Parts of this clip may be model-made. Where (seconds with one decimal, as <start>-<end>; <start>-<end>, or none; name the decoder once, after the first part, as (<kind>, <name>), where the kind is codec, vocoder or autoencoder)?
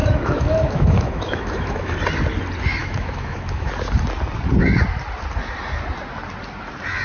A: 0.0-2.0 (autoencoder, DAC-VAE); 2.8-3.7